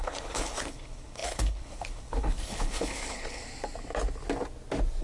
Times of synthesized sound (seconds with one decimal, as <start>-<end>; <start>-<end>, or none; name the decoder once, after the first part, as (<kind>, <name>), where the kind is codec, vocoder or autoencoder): 0.0-3.4 (codec, HILCodec)